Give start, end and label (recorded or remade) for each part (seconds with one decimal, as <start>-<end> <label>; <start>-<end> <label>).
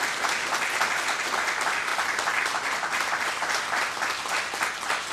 0.0-5.1 recorded